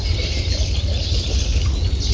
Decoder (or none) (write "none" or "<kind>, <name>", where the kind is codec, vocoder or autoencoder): none